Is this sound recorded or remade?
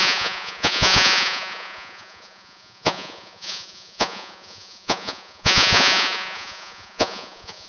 remade